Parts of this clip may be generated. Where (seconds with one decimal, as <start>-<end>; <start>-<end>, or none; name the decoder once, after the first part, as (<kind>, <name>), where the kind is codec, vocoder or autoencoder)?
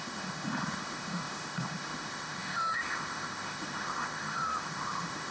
0.0-5.3 (autoencoder, DAC-VAE)